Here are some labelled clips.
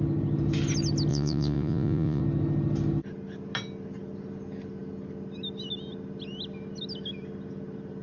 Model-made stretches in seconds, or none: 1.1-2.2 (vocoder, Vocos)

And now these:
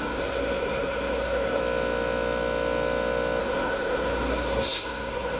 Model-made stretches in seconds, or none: 0.0-1.6 (codec, SNAC); 3.4-5.4

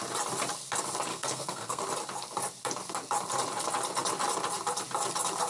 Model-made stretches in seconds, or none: 1.1-1.8 (codec, SNAC)

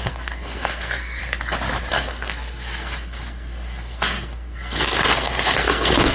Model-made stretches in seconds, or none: 0.0-1.2 (codec, SNAC); 1.9-6.1

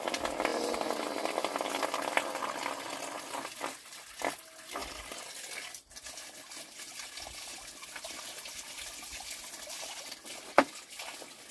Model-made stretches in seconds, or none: none

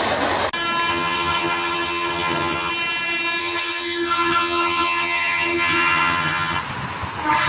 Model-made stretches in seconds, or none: 0.9-2.7 (vocoder, HiFi-GAN); 3.4-6.6

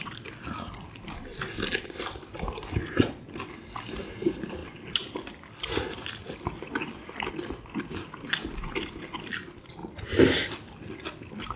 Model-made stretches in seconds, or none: none